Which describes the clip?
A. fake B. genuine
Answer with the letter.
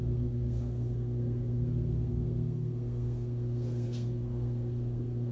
A